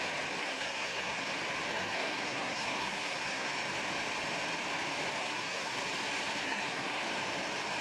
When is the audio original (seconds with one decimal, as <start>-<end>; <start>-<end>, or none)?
0.0-0.4; 1.2-1.7; 3.5-5.2; 5.8-6.4; 7.0-7.8